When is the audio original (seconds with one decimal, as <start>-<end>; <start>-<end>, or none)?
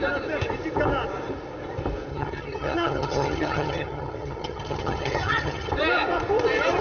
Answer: 0.0-2.1; 5.7-6.8